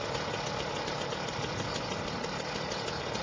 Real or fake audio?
real